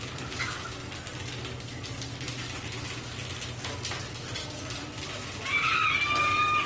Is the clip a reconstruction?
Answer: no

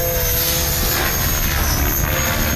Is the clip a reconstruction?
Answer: no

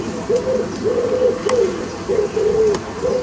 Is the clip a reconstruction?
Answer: no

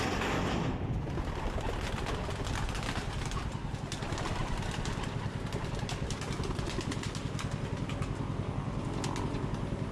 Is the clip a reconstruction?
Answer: no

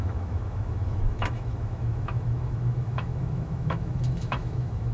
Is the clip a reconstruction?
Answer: yes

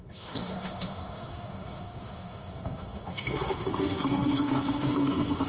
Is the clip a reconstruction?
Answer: yes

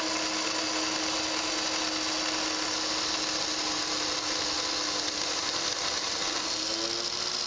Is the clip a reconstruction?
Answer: no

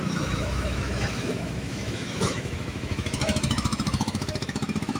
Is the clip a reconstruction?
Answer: yes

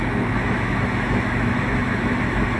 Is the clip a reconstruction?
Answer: yes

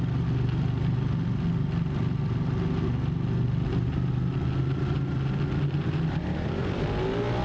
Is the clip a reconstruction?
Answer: no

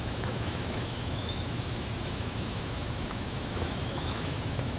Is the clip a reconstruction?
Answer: yes